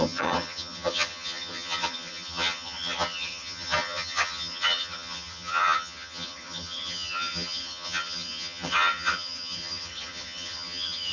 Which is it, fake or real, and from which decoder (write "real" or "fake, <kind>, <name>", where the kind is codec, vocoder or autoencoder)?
fake, vocoder, HiFi-GAN